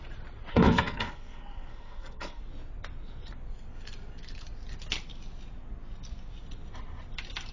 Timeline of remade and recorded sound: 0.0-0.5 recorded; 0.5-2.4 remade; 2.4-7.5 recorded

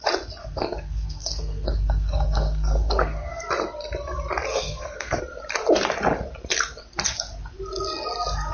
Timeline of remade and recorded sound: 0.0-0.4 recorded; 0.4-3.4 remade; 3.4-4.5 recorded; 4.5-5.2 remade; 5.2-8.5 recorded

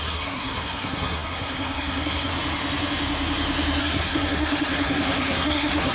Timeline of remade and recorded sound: 0.0-2.3 remade; 2.3-3.8 recorded; 3.8-5.9 remade

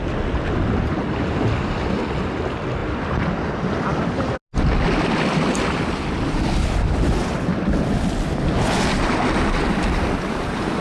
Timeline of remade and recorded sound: 0.0-10.8 recorded

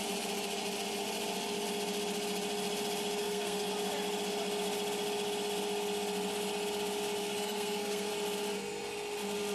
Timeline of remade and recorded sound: 0.0-3.2 recorded; 3.2-3.7 remade; 3.7-7.2 recorded; 7.2-8.1 remade; 8.1-9.5 recorded

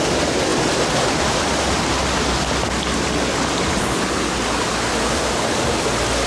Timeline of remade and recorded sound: 0.0-6.3 recorded

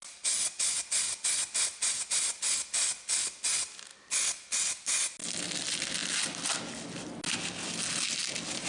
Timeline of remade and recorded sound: 0.0-8.7 recorded

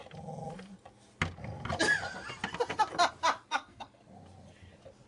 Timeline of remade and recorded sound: 0.0-3.5 recorded; 3.5-4.0 remade; 4.0-5.1 recorded